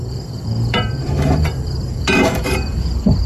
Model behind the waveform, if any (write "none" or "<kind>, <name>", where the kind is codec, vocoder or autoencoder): vocoder, BigVGAN v2